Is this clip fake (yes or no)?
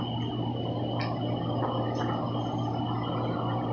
no